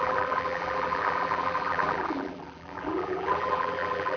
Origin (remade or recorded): remade